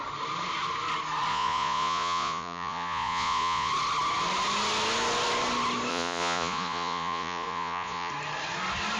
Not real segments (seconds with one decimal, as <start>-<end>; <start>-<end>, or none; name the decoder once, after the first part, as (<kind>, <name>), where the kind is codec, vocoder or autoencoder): 1.3-3.7 (vocoder, Vocos); 5.9-8.1